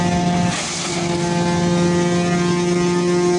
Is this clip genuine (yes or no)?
yes